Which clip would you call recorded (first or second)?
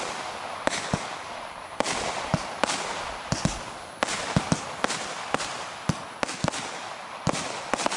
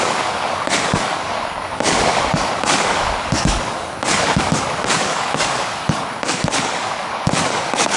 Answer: first